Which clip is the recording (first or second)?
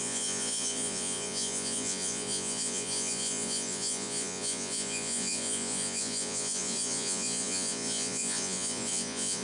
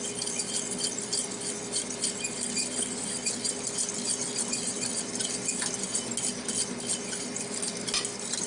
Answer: second